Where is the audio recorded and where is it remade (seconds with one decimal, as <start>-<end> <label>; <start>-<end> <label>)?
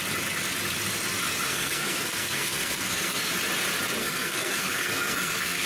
0.0-1.5 recorded; 1.5-3.3 remade; 3.3-4.0 recorded; 4.0-5.7 remade